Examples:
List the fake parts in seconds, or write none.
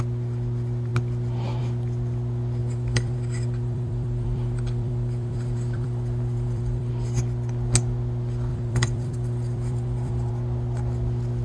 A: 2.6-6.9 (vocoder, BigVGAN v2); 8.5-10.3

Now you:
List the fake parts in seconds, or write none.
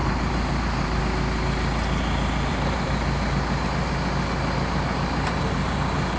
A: 0.0-1.0 (vocoder, BigVGAN v2); 2.5-3.9; 4.4-5.8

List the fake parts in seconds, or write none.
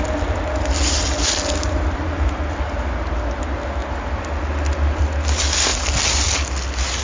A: 1.6-2.3 (vocoder, BigVGAN v2)